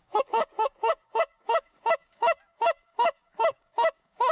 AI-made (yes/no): yes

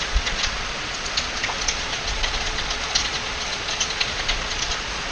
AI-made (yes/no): yes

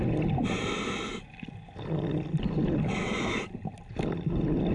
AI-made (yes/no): no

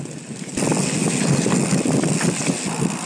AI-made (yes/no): no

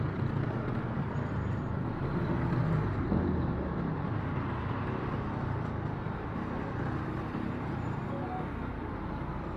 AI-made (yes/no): no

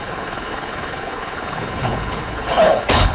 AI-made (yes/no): yes